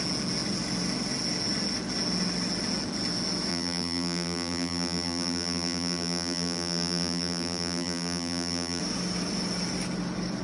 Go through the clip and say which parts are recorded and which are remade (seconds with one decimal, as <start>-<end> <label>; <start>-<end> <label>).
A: 0.0-3.5 recorded; 3.5-8.8 remade; 8.8-10.4 recorded